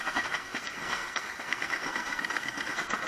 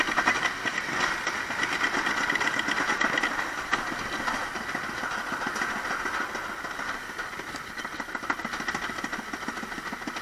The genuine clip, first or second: second